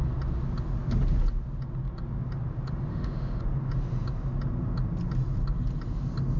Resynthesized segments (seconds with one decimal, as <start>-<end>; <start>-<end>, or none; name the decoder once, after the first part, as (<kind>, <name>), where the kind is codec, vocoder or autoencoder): 2.9-3.4 (autoencoder, DAC-VAE)